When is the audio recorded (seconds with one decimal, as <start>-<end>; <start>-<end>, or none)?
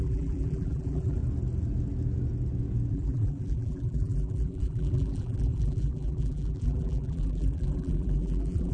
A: 1.2-2.9